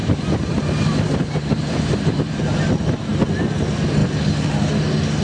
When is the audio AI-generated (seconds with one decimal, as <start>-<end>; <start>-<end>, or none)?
0.0-2.4